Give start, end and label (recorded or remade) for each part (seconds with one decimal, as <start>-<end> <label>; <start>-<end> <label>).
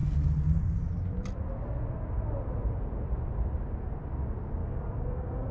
0.0-4.6 recorded; 4.6-5.5 remade